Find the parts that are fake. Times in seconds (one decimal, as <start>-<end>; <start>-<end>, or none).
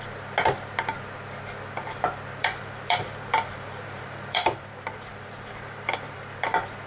2.4-6.5